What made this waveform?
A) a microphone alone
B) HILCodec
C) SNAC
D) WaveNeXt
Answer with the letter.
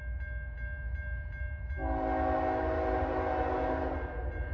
A